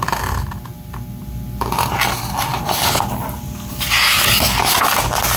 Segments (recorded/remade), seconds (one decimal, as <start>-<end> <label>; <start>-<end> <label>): 0.0-5.4 recorded